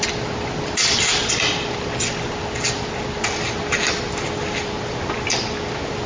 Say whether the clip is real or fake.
real